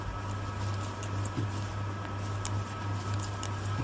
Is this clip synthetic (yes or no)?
no